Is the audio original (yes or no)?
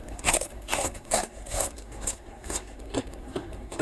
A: no